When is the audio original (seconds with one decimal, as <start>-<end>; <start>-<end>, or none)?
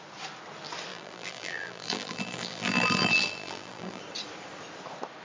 0.0-0.9; 4.0-5.2